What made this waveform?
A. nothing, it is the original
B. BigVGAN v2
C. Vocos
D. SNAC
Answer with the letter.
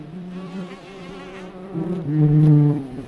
B